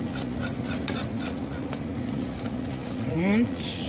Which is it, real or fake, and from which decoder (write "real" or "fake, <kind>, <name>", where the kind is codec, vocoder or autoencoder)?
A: fake, vocoder, Vocos